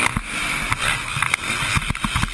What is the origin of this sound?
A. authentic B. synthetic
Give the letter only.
A